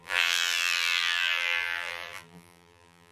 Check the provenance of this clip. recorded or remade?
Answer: remade